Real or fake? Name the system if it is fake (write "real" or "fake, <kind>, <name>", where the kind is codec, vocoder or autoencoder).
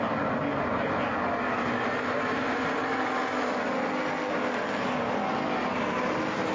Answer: real